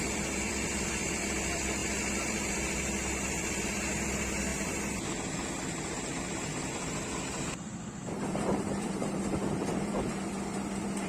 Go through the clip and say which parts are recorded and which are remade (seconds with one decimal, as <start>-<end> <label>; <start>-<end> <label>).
0.0-1.8 remade; 1.8-2.5 recorded; 2.5-11.1 remade